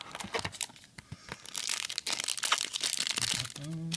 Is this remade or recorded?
recorded